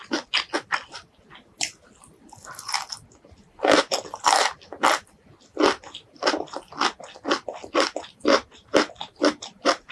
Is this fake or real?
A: real